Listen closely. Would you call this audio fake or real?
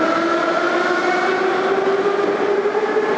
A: real